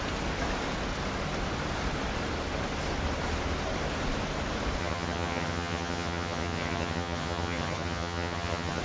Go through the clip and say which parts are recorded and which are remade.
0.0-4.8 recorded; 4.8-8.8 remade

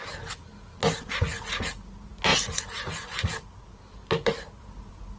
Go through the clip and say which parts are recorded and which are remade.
0.0-5.2 recorded

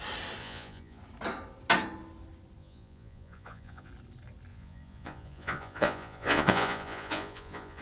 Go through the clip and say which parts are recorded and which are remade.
0.0-0.4 recorded; 0.4-1.0 remade; 1.0-2.6 recorded; 2.6-3.9 remade; 3.9-4.5 recorded; 4.5-7.8 remade

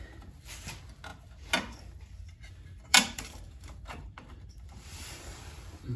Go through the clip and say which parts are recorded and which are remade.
0.0-2.9 recorded; 2.9-5.4 remade; 5.4-6.0 recorded